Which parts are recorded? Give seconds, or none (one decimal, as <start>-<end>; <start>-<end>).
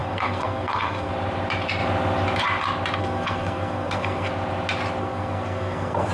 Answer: 1.1-3.0; 4.3-5.0